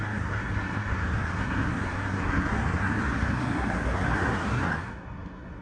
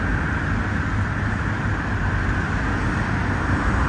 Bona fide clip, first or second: second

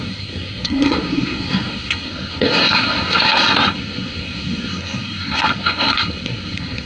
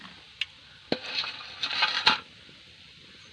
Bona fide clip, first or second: second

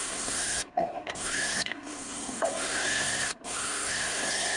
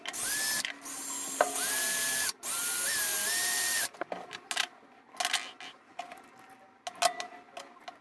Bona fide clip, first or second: second